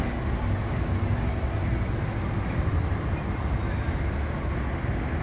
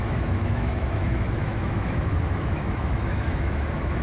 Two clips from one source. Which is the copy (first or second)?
second